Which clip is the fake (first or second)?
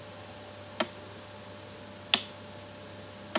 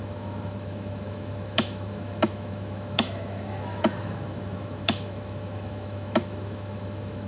second